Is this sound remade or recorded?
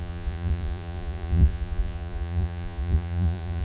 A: remade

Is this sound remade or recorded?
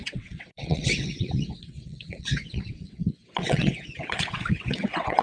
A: remade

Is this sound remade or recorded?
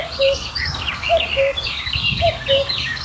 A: remade